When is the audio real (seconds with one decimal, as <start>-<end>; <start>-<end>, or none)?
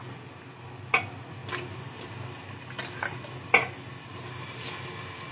0.0-5.3